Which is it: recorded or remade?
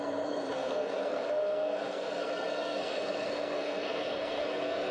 remade